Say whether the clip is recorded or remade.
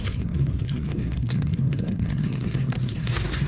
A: remade